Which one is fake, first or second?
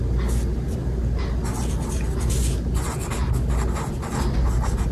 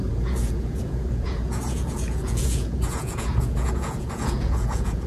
second